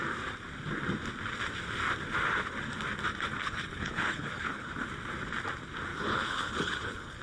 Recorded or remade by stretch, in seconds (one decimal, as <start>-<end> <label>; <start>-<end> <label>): 0.0-3.4 recorded; 3.4-4.7 remade; 4.7-5.9 recorded; 5.9-7.2 remade